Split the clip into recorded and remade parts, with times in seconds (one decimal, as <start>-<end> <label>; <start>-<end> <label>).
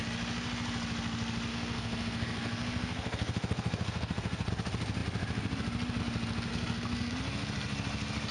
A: 0.0-1.5 recorded; 1.5-4.5 remade; 4.5-6.5 recorded; 6.5-7.1 remade; 7.1-8.3 recorded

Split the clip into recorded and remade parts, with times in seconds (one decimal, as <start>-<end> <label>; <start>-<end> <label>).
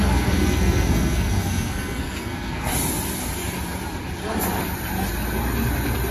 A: 0.0-2.7 remade; 2.7-6.1 recorded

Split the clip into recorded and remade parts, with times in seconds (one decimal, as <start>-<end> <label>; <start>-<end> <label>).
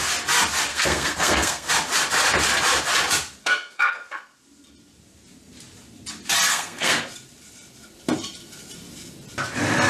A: 0.0-0.7 recorded; 0.7-1.7 remade; 1.7-3.4 recorded; 3.4-4.4 remade; 4.4-6.5 recorded; 6.5-7.0 remade; 7.0-9.9 recorded